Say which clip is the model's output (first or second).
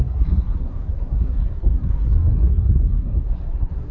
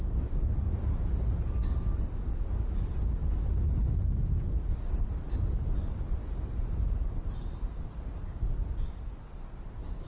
first